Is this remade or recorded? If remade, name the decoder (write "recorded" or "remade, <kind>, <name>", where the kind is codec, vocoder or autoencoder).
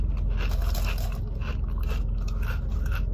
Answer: recorded